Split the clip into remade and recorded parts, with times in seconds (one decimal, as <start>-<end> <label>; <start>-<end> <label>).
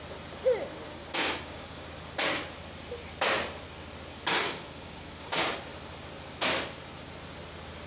0.0-1.0 recorded; 1.0-1.9 remade; 1.9-4.4 recorded; 4.4-5.3 remade; 5.3-7.9 recorded